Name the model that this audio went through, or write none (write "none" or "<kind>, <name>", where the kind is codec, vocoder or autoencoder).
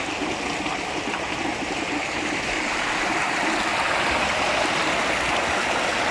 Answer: none